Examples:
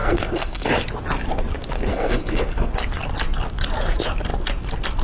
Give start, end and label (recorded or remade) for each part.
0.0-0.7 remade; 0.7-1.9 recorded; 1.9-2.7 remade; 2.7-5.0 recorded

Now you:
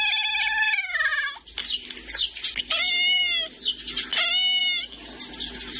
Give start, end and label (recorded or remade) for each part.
0.0-5.8 recorded